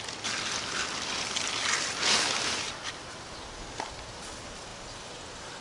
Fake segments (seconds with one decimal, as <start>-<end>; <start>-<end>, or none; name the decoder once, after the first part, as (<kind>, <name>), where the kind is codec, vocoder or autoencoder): none